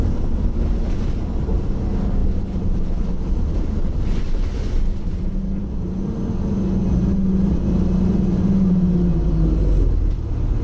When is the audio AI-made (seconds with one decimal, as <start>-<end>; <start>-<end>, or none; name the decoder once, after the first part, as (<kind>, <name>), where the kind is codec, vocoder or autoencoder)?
none